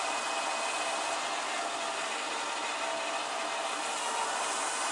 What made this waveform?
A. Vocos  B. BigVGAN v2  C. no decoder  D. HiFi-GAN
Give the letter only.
C